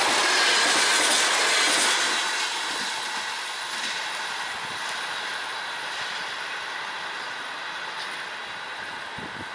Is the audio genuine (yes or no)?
yes